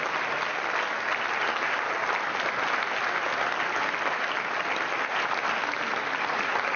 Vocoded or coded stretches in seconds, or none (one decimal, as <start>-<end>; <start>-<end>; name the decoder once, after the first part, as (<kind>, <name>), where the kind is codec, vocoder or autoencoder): none